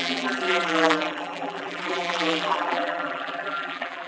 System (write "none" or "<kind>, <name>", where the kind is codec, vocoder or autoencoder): vocoder, BigVGAN v2